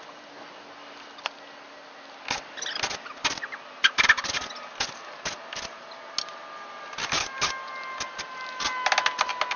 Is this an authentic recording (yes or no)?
yes